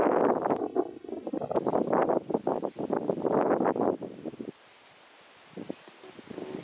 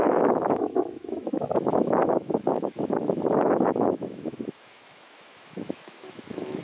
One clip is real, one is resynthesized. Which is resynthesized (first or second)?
second